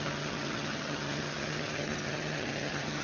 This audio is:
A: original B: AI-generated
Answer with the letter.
B